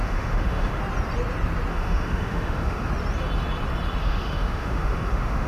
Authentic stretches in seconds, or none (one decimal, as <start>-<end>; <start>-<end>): 0.8-1.7; 2.9-4.0